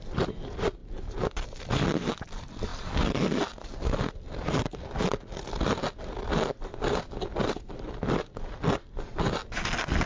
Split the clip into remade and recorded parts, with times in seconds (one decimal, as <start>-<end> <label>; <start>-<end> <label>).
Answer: 0.0-10.1 recorded